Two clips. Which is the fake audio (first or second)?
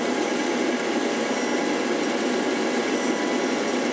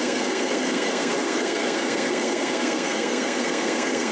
second